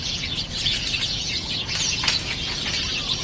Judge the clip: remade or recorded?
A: remade